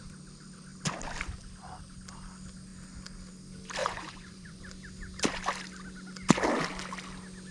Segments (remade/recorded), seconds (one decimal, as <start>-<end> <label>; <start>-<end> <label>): 0.0-3.8 recorded; 3.8-4.6 remade; 4.6-7.5 recorded